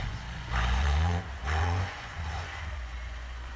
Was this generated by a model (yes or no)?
yes